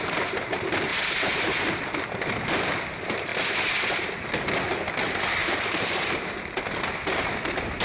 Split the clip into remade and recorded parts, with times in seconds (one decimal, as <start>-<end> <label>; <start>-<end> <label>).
0.0-0.9 recorded; 0.9-1.6 remade; 1.6-5.4 recorded; 5.4-6.1 remade; 6.1-7.8 recorded